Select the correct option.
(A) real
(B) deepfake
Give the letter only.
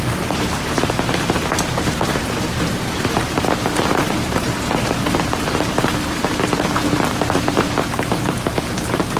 B